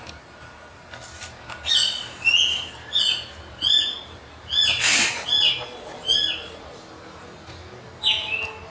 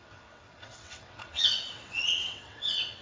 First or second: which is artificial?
second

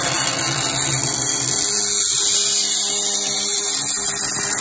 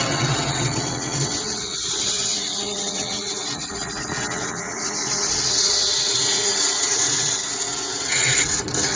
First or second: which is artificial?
second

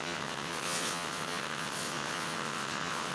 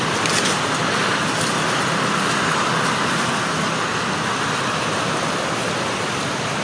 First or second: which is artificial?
first